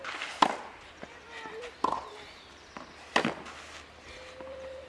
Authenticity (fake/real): real